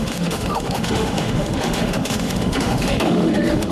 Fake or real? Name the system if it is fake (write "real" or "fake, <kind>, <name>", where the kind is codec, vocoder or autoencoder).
fake, autoencoder, DAC-VAE